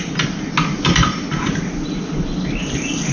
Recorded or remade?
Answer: recorded